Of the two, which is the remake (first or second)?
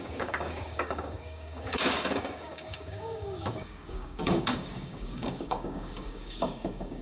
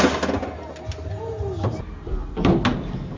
first